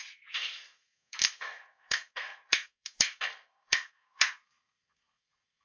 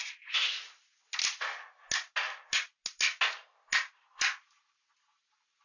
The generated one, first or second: first